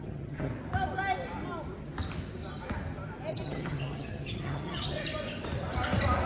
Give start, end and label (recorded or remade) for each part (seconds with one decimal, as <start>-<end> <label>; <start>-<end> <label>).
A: 0.0-0.5 remade; 0.5-3.3 recorded; 3.3-5.0 remade; 5.0-6.3 recorded